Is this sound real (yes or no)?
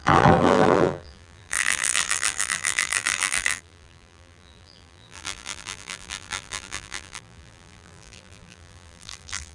no